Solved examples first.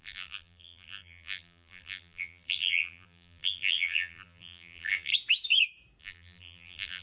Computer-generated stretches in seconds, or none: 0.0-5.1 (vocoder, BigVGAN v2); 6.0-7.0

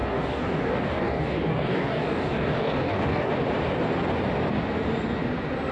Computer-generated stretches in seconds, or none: 0.0-3.3 (codec, DAC)

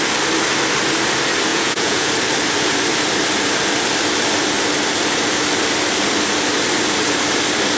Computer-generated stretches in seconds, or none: 1.5-2.1 (vocoder, Vocos)

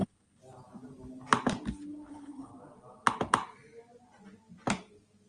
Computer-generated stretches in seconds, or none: 0.0-0.4 (codec, HILCodec); 2.1-2.5

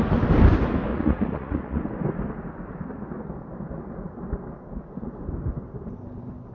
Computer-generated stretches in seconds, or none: 0.9-1.8 (vocoder, Vocos)

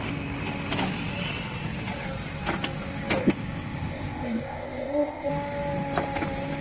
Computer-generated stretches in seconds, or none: 3.2-5.3 (codec, ZipCodec)